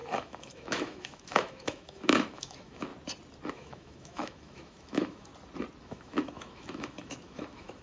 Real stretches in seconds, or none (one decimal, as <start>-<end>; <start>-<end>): 2.9-3.5; 5.3-5.8